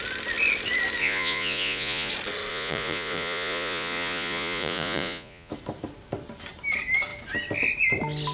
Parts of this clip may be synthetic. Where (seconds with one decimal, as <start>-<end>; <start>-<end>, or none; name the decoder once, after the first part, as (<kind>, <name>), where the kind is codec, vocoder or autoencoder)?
1.0-2.1 (vocoder, Vocos); 2.5-5.5